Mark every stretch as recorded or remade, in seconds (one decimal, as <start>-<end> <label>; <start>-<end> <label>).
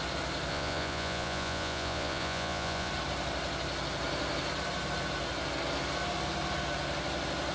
0.0-0.5 recorded; 0.5-2.9 remade; 2.9-7.5 recorded